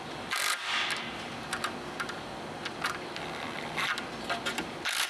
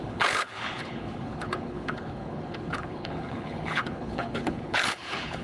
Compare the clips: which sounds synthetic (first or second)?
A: second